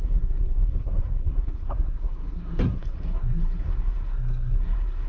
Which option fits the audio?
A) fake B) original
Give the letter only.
A